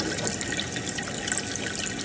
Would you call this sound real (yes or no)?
yes